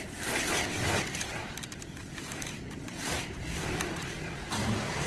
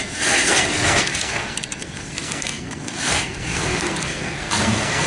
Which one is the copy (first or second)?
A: second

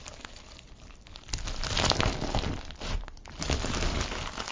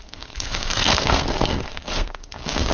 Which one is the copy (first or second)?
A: second